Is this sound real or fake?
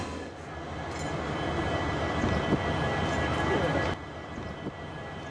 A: real